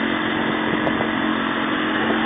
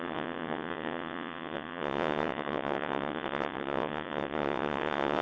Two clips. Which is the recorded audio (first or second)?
first